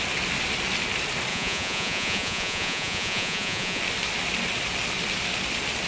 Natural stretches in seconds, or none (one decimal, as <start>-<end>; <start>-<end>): 0.0-1.3; 3.8-5.9